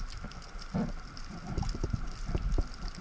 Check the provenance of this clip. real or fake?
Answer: real